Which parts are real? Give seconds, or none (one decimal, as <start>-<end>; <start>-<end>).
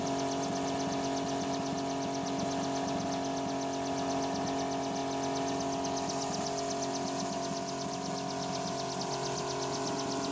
0.0-10.3